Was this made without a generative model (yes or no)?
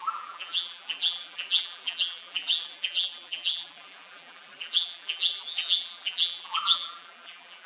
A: no